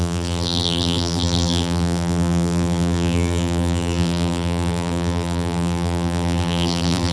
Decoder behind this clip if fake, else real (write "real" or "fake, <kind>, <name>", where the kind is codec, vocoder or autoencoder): fake, vocoder, BigVGAN v2